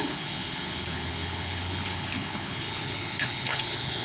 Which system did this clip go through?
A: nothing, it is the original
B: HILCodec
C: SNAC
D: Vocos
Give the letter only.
B